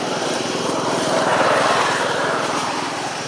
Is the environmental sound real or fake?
fake